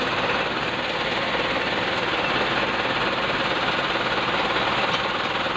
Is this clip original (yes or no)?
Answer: yes